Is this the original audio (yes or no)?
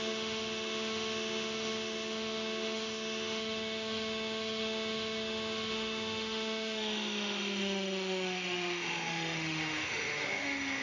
no